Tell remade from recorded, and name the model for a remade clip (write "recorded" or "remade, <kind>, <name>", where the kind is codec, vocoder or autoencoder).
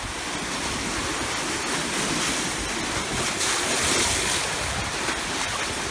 recorded